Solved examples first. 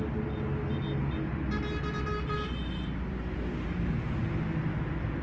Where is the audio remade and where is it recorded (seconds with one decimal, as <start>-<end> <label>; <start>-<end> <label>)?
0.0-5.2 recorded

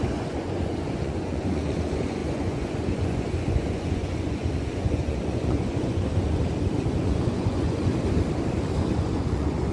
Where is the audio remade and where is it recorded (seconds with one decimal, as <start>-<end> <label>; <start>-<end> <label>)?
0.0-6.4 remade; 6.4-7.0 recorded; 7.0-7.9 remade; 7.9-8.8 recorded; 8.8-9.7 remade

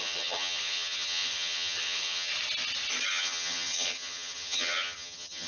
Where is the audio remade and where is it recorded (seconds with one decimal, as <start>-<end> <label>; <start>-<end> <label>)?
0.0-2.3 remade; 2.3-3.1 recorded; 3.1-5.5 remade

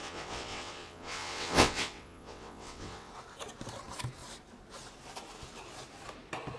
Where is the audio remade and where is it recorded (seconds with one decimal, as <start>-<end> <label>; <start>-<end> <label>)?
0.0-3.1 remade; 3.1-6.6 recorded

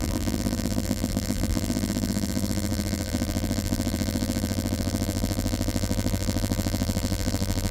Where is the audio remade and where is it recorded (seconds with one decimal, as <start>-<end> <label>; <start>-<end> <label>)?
0.0-7.7 remade

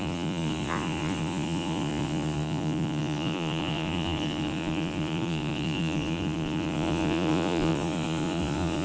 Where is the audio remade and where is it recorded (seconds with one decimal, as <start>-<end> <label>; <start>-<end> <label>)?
0.0-8.8 remade

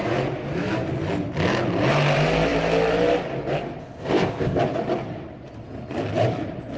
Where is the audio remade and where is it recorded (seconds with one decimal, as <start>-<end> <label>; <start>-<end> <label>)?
0.0-3.8 recorded; 3.8-4.6 remade; 4.6-6.8 recorded

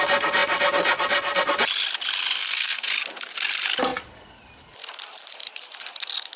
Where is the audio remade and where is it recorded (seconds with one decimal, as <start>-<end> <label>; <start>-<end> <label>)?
0.0-2.4 recorded; 2.4-2.9 remade; 2.9-6.4 recorded